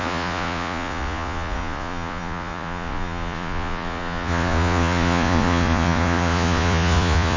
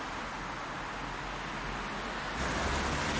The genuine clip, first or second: second